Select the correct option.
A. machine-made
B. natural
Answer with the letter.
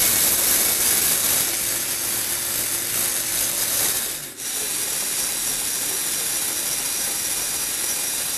B